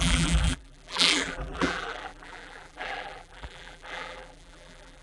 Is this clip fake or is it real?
fake